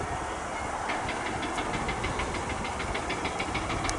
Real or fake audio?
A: real